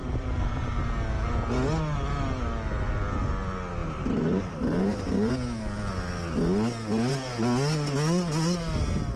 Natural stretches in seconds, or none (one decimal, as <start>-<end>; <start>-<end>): 0.8-3.8; 5.3-9.2

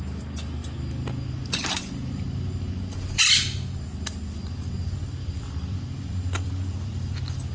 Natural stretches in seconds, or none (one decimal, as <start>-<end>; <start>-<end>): 0.0-4.8